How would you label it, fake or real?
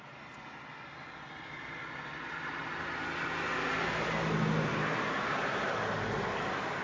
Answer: real